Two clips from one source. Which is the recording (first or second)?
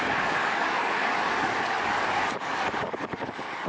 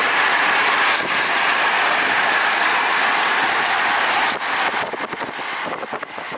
second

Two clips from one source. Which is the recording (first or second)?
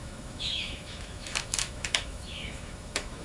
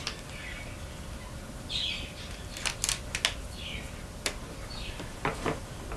second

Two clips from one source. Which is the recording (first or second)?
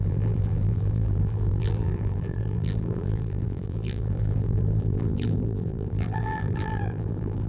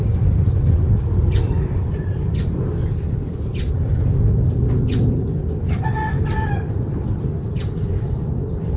second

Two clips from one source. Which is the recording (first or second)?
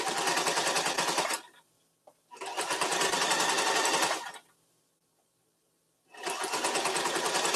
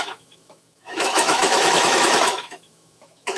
first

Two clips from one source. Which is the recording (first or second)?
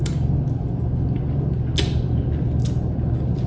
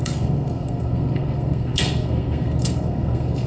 first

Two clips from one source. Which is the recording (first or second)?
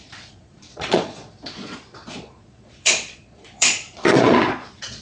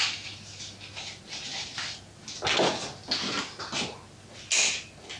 second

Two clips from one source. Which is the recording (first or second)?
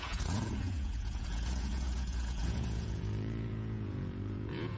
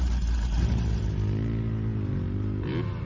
second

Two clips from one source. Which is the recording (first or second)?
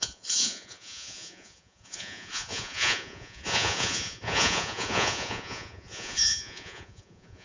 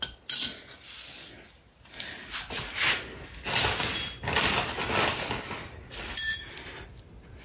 second